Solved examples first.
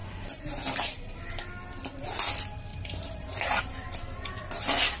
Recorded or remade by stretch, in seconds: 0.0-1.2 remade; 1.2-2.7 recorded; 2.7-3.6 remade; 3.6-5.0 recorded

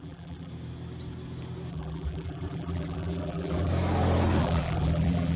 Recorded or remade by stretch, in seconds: 0.0-0.5 remade; 0.5-1.7 recorded; 1.7-3.7 remade; 3.7-4.4 recorded; 4.4-5.4 remade

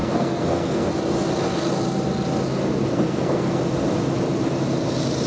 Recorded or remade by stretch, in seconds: 0.0-0.9 remade; 0.9-2.9 recorded; 2.9-3.6 remade; 3.6-5.3 recorded